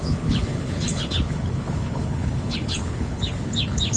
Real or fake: fake